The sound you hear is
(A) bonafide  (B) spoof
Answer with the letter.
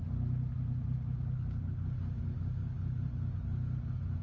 A